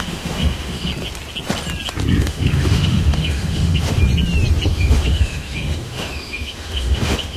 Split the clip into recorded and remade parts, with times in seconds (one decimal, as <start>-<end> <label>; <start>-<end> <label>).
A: 0.0-0.9 remade; 0.9-2.2 recorded; 2.2-4.0 remade; 4.0-4.7 recorded; 4.7-7.4 remade